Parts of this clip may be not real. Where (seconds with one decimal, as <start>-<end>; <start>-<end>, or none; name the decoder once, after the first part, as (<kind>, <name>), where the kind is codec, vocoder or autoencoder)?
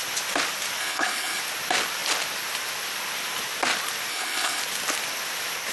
0.8-1.4 (codec, HILCodec); 4.1-4.6